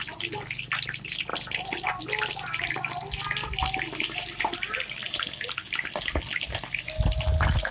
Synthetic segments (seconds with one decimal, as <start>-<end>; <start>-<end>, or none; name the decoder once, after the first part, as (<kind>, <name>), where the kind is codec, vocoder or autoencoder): none